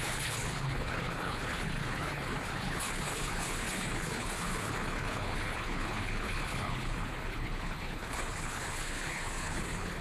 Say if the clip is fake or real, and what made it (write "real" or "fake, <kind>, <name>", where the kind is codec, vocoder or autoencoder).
fake, codec, HILCodec